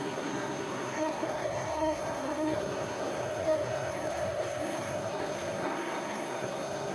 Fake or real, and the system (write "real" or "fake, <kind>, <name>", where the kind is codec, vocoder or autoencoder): fake, codec, SNAC